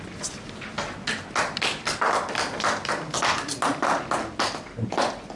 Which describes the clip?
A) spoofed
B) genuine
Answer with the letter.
B